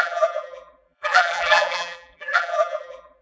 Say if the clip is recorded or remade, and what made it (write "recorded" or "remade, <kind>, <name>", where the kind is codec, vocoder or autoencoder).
remade, vocoder, BigVGAN v2